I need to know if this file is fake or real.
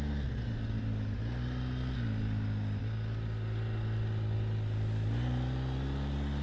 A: real